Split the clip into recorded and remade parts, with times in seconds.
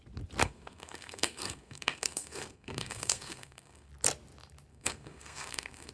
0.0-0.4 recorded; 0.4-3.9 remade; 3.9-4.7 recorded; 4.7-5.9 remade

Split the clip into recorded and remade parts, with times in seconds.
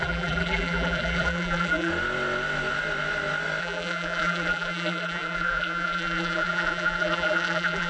0.0-1.9 remade; 1.9-3.6 recorded; 3.6-7.9 remade